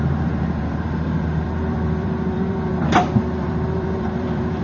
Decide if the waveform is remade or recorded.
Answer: remade